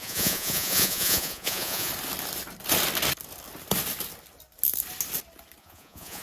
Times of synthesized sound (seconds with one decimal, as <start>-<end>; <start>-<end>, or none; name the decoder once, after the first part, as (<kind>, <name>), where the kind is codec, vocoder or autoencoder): 0.0-1.9 (vocoder, Vocos); 5.6-6.2